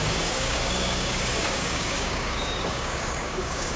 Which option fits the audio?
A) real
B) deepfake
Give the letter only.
B